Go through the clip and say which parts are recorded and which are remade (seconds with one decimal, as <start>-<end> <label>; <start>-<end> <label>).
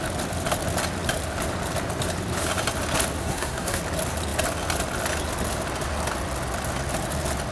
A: 0.0-3.2 recorded; 3.2-3.8 remade; 3.8-7.5 recorded